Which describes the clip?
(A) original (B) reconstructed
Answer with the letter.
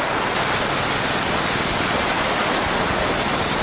A